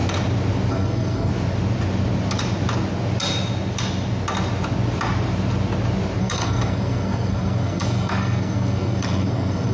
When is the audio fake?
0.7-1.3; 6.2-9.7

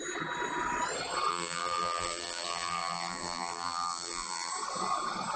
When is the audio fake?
1.3-4.5

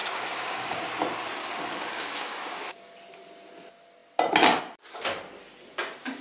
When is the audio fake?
0.0-0.8; 1.4-2.9

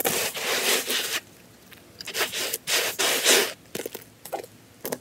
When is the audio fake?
none

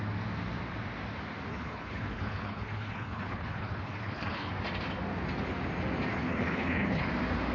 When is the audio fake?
1.5-4.5; 6.1-7.1